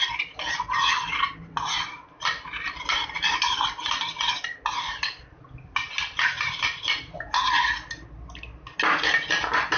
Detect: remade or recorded recorded